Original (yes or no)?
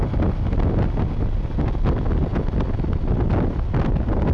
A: yes